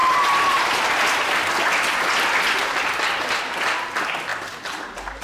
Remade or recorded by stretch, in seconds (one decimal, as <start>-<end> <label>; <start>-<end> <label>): 0.0-3.0 remade; 3.0-4.3 recorded; 4.3-4.8 remade; 4.8-5.2 recorded